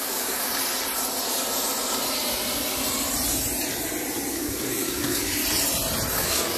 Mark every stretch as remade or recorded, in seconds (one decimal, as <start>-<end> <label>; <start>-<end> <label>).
0.0-0.5 remade; 0.5-4.3 recorded; 4.3-5.4 remade; 5.4-6.1 recorded; 6.1-6.6 remade